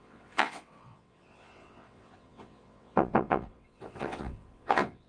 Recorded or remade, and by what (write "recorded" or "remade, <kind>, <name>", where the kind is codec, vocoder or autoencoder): remade, vocoder, WaveNeXt